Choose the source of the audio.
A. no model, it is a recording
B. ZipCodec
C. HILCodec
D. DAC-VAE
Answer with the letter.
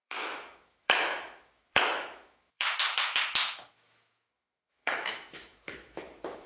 D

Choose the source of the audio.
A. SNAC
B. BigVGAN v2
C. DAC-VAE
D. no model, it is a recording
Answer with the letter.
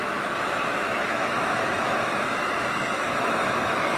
C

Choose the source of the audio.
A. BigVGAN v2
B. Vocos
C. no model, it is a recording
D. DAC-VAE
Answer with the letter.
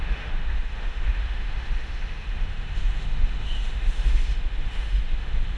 D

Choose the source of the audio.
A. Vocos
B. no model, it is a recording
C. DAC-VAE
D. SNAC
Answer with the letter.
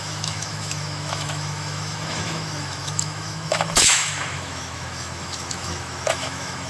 C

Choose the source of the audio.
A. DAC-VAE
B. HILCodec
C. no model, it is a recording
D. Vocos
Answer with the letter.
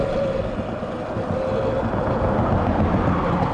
C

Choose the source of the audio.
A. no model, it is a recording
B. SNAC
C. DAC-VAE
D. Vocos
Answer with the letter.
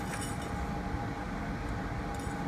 A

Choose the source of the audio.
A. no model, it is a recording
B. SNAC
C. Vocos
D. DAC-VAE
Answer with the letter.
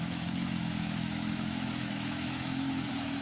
D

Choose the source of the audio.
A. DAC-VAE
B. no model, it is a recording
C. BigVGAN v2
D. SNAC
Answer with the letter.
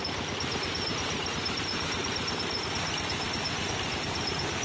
B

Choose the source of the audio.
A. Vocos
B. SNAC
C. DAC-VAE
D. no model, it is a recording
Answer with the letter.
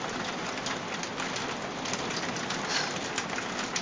D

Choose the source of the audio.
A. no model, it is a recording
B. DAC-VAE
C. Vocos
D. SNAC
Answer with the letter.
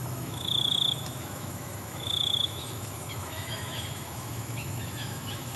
B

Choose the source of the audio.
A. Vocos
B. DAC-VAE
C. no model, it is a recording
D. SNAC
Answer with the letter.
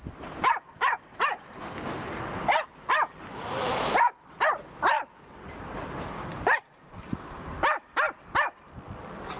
C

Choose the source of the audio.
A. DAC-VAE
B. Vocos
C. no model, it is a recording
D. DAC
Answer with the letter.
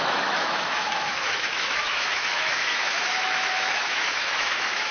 A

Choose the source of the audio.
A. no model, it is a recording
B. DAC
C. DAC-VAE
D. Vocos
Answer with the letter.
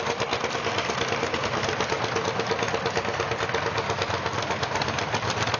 A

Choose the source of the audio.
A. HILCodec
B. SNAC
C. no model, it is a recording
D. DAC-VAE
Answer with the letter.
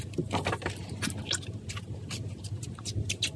C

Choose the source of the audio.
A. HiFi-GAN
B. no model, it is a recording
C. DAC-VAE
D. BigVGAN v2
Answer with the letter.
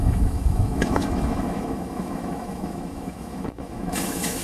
C